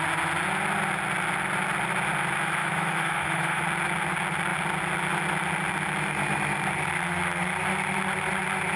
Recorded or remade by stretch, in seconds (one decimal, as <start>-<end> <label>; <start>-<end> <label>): 0.0-2.6 recorded; 2.6-3.6 remade; 3.6-8.8 recorded